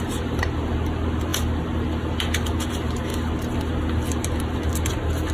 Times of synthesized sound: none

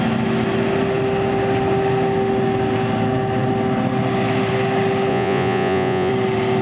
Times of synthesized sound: 5.1-6.1 (vocoder, Vocos)

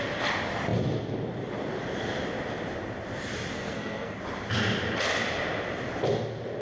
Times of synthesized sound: 3.5-4.2 (codec, SNAC)

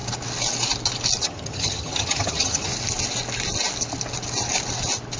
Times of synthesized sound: 1.2-2.7 (vocoder, HiFi-GAN)

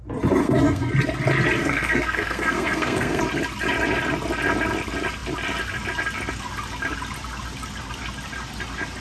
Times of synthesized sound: 0.4-0.9 (codec, SNAC); 1.6-3.2